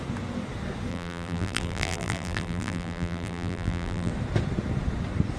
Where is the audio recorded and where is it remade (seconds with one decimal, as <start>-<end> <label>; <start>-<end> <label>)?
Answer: 0.0-0.9 recorded; 0.9-4.1 remade; 4.1-5.4 recorded